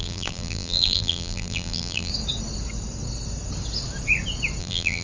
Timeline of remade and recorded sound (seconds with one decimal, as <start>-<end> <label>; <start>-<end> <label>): 0.0-2.1 remade; 2.1-4.6 recorded; 4.6-5.0 remade